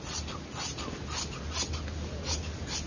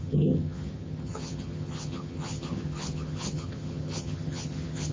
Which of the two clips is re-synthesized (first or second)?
second